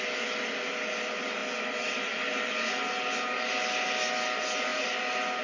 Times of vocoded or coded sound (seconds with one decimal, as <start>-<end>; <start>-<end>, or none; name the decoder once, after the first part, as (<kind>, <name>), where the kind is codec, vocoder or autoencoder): none